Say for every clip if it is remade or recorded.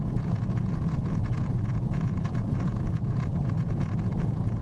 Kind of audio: remade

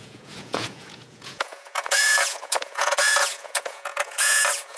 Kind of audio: remade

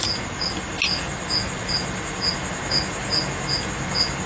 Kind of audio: recorded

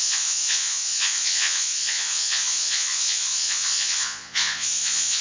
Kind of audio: remade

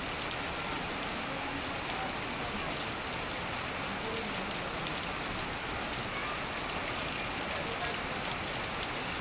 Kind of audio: recorded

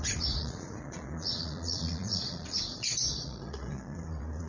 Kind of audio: remade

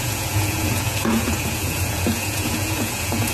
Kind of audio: remade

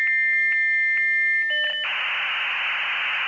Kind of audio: recorded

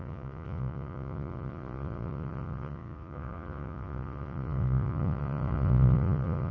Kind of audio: remade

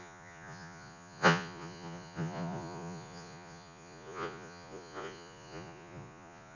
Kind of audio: remade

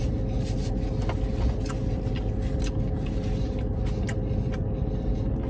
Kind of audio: recorded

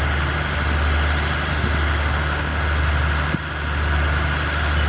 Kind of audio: recorded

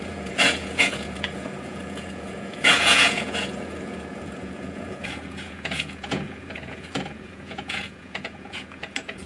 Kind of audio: remade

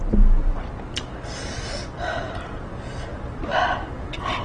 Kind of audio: recorded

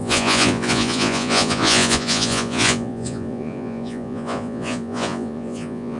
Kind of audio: remade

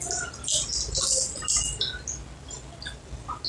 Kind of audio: recorded